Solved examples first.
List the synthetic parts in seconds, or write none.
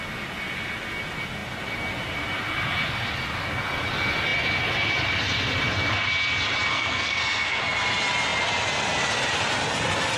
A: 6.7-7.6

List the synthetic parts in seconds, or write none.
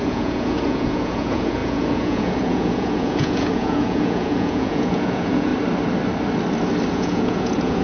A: 0.0-5.5; 6.9-7.8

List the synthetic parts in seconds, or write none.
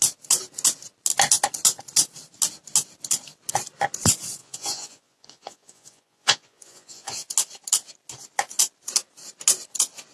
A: 4.4-7.3